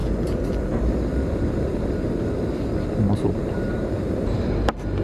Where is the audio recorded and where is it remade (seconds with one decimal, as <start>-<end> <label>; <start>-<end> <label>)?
0.0-3.0 recorded; 3.0-5.0 remade